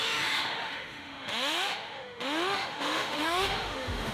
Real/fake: fake